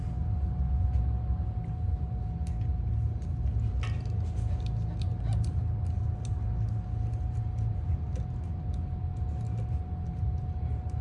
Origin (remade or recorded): recorded